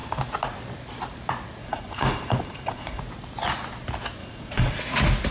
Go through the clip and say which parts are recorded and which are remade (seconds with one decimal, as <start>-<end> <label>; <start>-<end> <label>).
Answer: 0.0-1.6 recorded; 1.6-3.0 remade; 3.0-4.2 recorded; 4.2-4.8 remade; 4.8-5.3 recorded